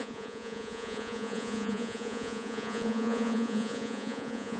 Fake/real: fake